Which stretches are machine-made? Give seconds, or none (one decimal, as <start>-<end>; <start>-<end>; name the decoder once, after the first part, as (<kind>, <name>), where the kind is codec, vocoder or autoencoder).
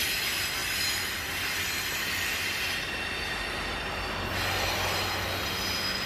none